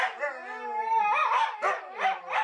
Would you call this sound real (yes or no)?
yes